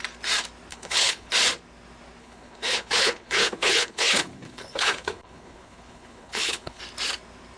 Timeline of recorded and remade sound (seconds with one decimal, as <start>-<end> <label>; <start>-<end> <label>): 0.0-0.7 recorded; 0.7-1.3 remade; 1.3-2.2 recorded; 2.2-6.8 remade; 6.8-7.6 recorded